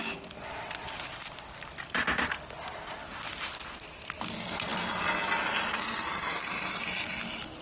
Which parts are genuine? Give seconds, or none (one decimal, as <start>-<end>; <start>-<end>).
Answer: 0.0-7.6